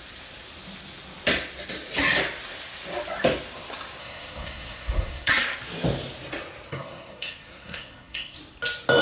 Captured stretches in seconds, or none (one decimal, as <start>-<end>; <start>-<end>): 0.0-4.0; 5.3-6.7; 8.4-9.0